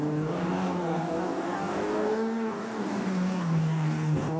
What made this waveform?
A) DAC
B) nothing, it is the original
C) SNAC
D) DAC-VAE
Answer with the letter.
A